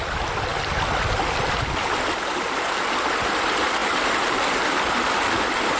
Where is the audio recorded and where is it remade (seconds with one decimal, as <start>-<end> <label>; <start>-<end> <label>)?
0.0-5.8 recorded